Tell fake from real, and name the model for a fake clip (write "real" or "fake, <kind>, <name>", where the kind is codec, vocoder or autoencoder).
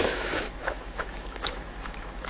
fake, autoencoder, DAC-VAE